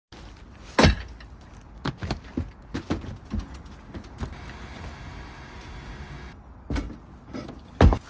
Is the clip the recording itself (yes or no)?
yes